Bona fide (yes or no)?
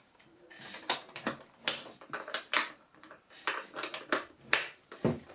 no